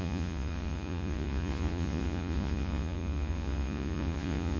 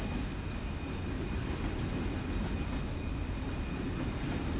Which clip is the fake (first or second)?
first